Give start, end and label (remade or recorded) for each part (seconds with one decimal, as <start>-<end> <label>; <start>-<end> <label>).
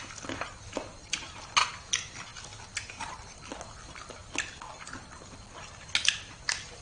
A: 0.0-6.8 recorded